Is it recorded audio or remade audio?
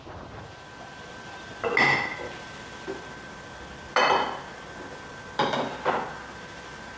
recorded